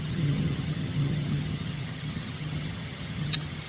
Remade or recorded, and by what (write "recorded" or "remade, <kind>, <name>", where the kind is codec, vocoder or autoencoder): remade, vocoder, HiFi-GAN